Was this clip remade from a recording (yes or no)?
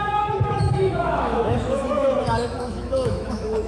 yes